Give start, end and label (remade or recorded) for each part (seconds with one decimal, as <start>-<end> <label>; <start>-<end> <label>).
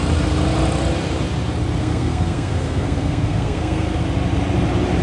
0.0-1.8 recorded; 1.8-4.0 remade; 4.0-5.0 recorded